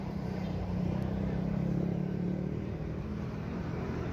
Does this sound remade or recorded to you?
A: remade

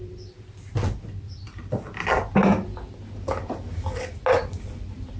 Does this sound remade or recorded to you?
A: recorded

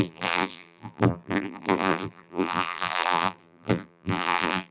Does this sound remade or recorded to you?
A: remade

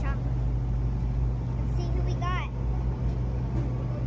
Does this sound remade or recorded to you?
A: recorded